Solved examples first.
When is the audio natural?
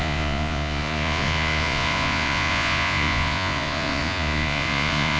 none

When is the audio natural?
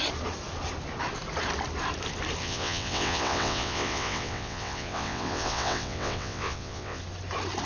0.0-2.4; 7.0-7.7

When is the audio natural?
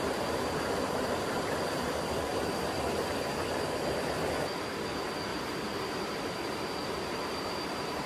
0.0-5.3; 6.0-7.3